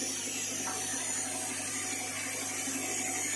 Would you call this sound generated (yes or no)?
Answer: no